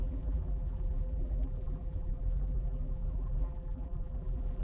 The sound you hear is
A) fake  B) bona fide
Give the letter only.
A